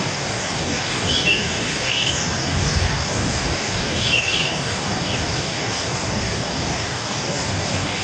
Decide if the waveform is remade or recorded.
remade